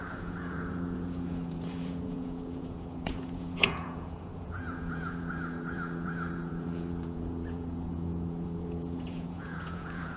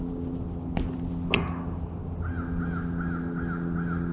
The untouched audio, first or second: second